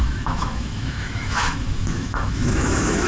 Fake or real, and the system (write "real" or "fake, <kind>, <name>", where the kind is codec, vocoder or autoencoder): fake, autoencoder, DAC-VAE